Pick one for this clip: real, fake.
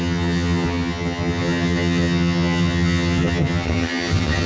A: fake